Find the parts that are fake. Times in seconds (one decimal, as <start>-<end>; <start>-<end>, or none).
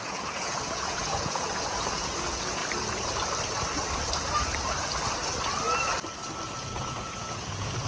0.0-2.6; 6.5-7.9